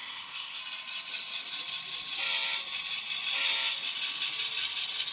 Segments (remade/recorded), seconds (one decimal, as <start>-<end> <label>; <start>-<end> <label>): 0.0-0.6 remade; 0.6-5.1 recorded